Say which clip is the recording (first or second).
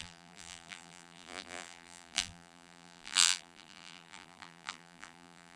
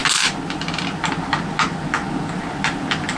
second